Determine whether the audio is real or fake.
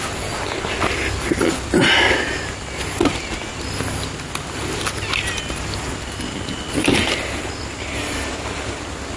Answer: real